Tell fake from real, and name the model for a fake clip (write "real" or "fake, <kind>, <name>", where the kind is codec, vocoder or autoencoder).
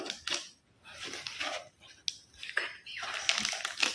real